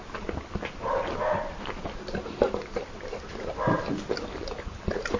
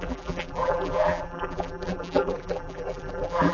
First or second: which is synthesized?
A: second